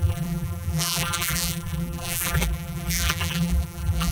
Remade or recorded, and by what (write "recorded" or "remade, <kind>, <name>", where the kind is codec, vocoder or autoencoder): remade, vocoder, BigVGAN v2